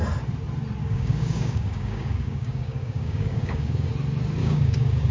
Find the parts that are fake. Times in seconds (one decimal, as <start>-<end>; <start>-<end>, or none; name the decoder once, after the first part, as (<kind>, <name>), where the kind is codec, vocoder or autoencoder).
0.8-3.9 (codec, DAC); 4.4-5.1